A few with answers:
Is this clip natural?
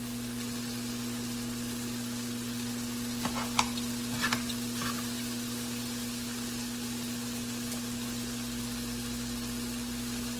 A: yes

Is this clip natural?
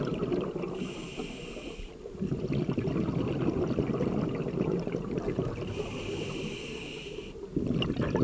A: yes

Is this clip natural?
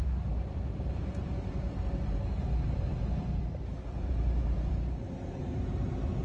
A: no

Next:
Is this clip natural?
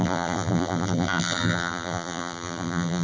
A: no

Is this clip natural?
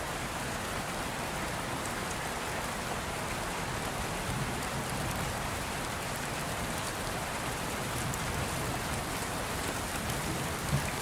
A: no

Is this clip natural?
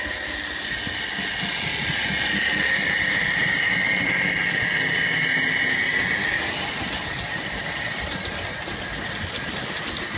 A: yes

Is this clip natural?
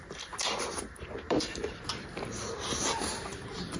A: no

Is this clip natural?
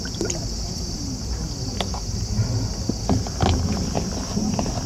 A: yes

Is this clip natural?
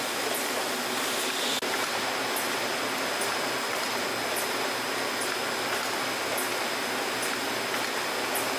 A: yes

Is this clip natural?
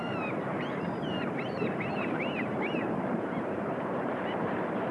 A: no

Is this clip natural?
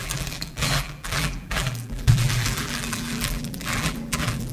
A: no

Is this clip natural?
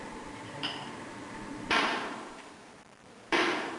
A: no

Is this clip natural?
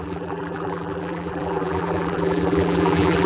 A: no